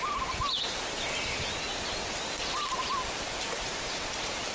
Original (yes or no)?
yes